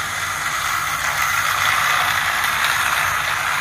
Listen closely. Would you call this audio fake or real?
real